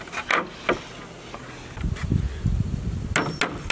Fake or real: real